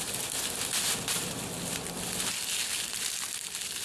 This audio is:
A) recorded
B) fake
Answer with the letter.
A